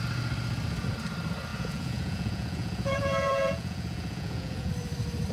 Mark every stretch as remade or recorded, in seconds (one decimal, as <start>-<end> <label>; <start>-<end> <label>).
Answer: 0.0-1.5 recorded; 1.5-4.7 remade; 4.7-5.3 recorded